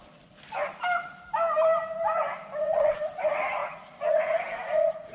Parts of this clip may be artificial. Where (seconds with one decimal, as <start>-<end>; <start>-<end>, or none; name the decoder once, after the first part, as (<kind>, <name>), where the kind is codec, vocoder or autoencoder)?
2.6-5.1 (vocoder, Vocos)